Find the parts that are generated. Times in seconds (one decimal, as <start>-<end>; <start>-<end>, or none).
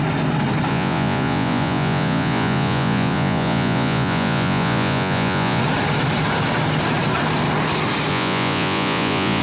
0.7-5.6; 8.1-9.4